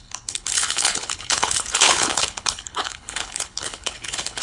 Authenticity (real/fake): fake